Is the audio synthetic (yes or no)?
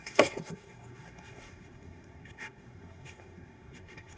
yes